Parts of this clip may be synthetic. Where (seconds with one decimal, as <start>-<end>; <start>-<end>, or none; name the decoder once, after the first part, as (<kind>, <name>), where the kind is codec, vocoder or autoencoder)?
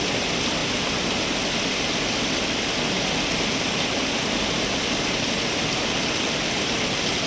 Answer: none